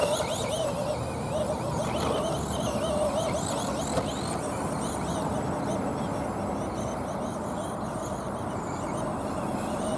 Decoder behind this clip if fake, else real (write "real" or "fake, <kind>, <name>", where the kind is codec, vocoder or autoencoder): real